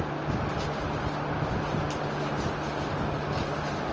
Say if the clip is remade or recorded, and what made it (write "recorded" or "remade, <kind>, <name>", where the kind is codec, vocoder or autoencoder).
recorded